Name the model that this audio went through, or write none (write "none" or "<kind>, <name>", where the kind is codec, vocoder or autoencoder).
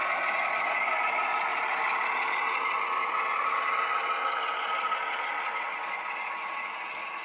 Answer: none